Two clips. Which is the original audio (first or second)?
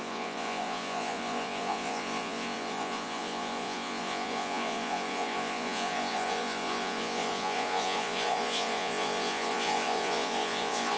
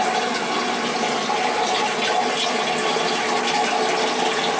second